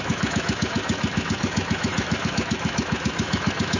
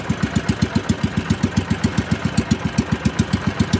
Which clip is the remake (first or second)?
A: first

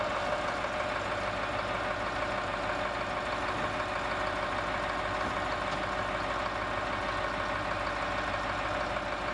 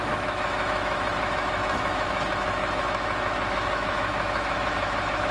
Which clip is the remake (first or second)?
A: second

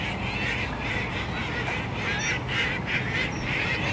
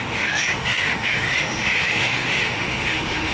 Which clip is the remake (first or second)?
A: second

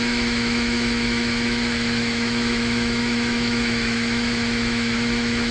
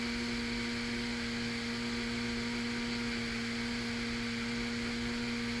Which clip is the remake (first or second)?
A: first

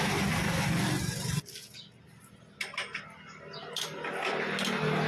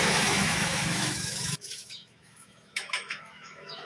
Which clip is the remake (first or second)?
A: second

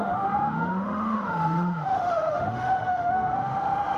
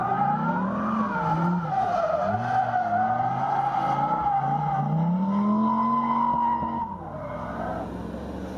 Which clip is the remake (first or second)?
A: first